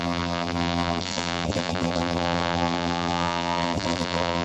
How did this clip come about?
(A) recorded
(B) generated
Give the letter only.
B